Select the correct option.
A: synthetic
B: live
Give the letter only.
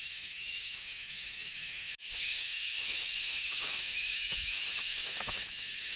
A